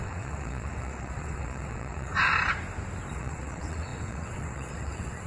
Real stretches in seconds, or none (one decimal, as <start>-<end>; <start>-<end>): 2.1-3.1